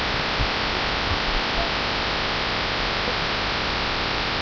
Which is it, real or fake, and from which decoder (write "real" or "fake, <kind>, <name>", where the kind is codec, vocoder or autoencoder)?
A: real